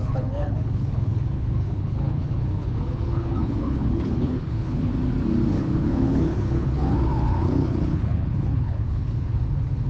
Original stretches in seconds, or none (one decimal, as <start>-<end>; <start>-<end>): 4.9-5.6